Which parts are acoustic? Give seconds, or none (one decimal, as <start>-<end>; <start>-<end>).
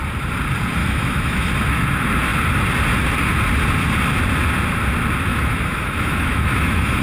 0.0-0.8; 1.5-5.3